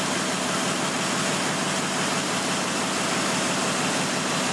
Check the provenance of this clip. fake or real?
real